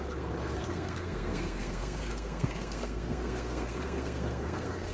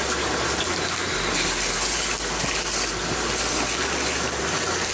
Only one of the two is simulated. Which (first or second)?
first